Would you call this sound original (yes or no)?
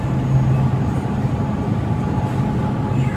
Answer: yes